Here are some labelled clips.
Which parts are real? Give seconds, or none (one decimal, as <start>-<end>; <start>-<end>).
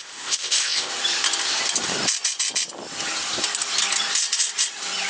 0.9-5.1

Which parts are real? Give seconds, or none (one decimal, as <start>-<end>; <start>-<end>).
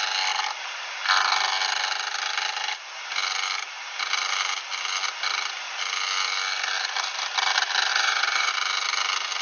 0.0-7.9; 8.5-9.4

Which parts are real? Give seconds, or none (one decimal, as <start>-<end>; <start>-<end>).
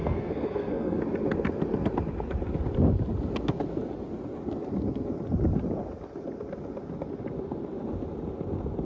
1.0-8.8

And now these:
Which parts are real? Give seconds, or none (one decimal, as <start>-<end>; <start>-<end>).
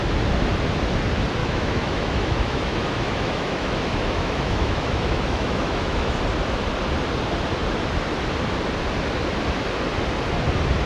0.0-1.4; 6.2-10.9